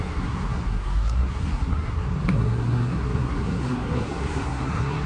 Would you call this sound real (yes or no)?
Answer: no